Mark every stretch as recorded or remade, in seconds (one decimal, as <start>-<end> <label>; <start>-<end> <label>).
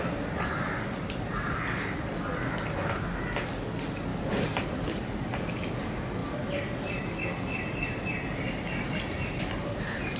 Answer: 0.0-4.1 recorded; 4.1-4.9 remade; 4.9-10.2 recorded